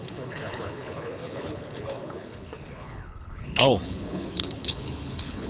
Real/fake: fake